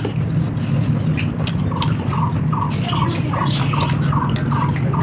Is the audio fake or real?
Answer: real